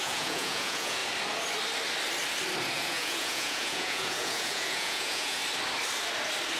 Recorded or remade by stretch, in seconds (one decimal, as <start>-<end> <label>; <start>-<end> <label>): 0.0-1.0 remade; 1.0-2.7 recorded; 2.7-5.4 remade; 5.4-6.6 recorded

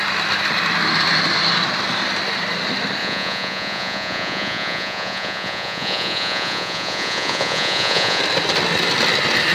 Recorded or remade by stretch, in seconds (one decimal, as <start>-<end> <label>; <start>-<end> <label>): 0.0-3.0 recorded; 3.0-8.2 remade; 8.2-9.5 recorded

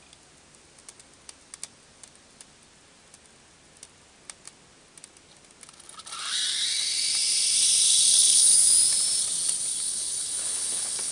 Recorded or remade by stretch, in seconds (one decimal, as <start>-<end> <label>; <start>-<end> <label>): 0.0-8.1 recorded; 8.1-8.7 remade; 8.7-9.7 recorded; 9.7-11.1 remade

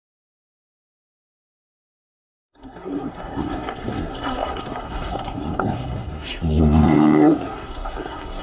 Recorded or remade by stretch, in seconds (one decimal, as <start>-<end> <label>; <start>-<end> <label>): 0.0-8.4 remade

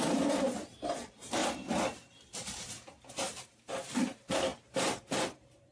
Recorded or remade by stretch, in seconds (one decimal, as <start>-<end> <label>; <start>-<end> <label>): 0.0-1.4 remade; 1.4-2.3 recorded; 2.3-5.7 remade

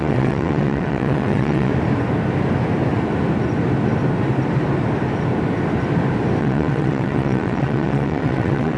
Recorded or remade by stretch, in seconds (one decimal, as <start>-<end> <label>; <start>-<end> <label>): 0.0-1.7 remade; 1.7-6.4 recorded; 6.4-8.8 remade